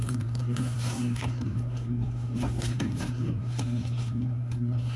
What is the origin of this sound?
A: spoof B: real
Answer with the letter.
A